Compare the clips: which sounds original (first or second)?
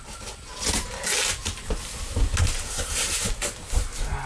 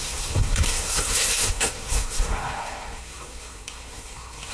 first